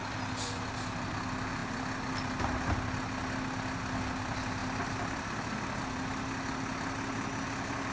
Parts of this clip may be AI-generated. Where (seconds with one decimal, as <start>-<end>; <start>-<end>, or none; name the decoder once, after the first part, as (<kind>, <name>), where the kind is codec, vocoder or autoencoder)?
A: none